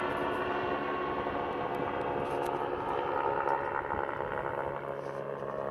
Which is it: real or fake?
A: real